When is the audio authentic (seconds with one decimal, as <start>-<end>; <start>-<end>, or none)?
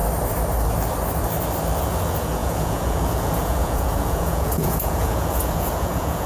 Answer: 0.0-1.8